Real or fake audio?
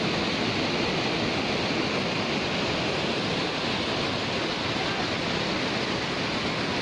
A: real